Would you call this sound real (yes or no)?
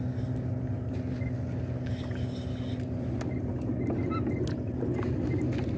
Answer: yes